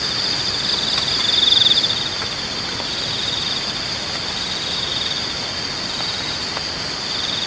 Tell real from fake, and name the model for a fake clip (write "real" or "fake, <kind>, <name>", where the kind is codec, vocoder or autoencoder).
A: real